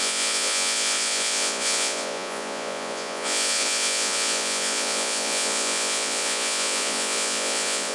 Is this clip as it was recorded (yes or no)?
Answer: no